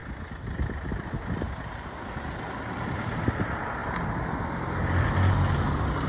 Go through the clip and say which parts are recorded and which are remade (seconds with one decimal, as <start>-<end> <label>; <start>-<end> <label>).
0.0-6.1 recorded